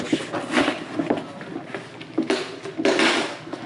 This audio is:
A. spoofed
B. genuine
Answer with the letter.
B